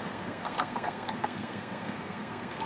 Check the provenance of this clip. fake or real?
fake